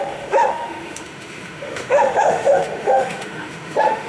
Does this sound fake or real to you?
fake